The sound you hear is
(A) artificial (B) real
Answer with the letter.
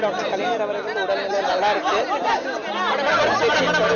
B